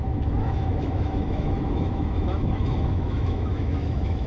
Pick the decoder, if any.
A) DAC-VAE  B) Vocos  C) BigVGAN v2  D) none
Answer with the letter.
A